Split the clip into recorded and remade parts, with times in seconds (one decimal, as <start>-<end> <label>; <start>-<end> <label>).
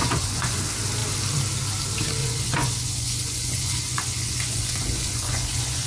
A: 0.0-0.6 remade; 0.6-2.2 recorded; 2.2-5.9 remade